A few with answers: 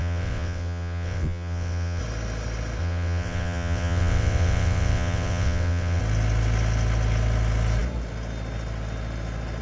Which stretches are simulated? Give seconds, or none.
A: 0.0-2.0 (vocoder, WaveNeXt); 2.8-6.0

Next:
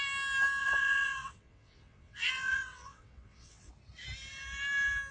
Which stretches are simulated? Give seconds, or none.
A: 0.6-3.7 (vocoder, WaveNeXt)